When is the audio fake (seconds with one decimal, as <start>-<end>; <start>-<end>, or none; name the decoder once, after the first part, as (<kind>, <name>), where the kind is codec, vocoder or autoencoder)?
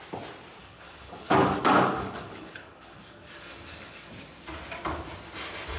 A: 0.6-4.1 (codec, DAC)